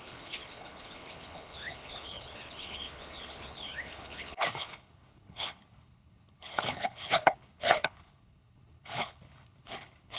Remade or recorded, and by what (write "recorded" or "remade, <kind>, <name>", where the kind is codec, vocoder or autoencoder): remade, codec, HILCodec